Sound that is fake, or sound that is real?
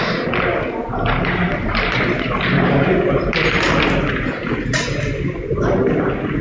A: real